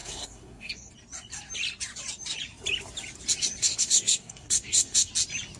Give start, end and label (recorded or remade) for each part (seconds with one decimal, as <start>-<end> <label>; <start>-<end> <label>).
0.0-0.9 remade; 0.9-3.6 recorded; 3.6-5.1 remade; 5.1-5.6 recorded